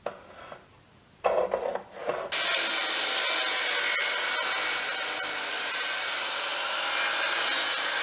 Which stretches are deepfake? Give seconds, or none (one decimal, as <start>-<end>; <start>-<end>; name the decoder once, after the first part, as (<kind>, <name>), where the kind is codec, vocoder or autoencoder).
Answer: none